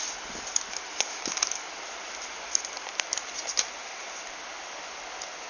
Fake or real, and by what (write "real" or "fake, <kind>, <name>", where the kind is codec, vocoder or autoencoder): real